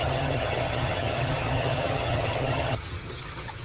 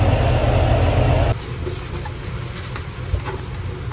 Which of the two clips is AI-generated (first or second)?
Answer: first